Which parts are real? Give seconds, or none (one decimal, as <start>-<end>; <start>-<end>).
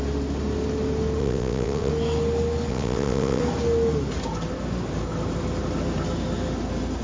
0.0-1.2; 1.9-2.7; 3.4-7.0